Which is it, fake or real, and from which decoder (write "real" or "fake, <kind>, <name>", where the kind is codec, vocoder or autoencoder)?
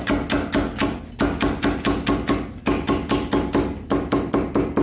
real